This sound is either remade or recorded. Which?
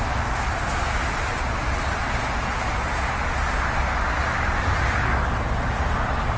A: recorded